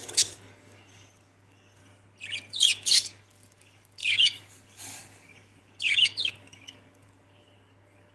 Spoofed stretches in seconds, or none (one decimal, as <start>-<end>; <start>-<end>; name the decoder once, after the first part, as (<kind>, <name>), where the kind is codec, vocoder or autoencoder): 0.0-1.8 (codec, DAC); 2.5-8.1